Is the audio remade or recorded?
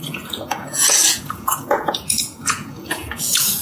remade